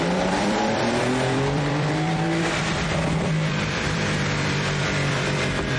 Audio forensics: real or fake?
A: fake